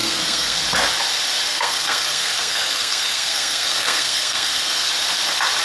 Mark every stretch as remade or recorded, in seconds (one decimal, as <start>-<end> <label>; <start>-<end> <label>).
0.0-0.6 remade; 0.6-1.5 recorded; 1.5-4.9 remade; 4.9-5.6 recorded